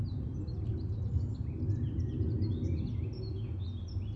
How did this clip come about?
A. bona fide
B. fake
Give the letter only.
A